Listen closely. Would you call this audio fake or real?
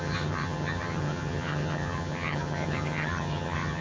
fake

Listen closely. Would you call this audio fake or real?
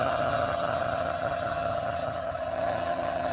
fake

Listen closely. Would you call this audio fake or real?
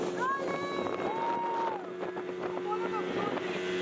real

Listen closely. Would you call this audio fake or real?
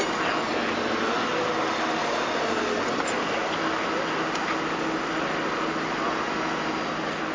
real